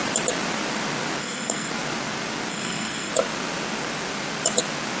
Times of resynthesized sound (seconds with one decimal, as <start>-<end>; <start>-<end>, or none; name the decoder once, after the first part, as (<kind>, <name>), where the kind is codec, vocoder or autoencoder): 1.2-1.7 (codec, SNAC); 2.5-3.1